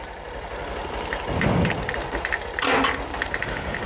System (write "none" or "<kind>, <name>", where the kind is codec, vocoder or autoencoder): none